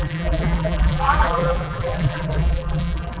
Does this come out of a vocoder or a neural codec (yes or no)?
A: yes